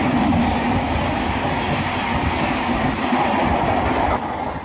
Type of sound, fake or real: real